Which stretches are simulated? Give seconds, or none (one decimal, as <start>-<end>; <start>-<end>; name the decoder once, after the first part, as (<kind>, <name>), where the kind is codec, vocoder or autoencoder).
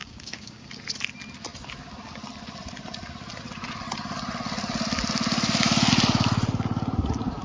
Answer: 0.0-0.7 (codec, DAC)